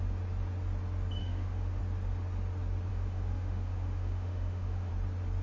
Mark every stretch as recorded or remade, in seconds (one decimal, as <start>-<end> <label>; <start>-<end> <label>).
0.0-1.2 recorded; 1.2-1.8 remade; 1.8-2.9 recorded; 2.9-4.9 remade; 4.9-5.4 recorded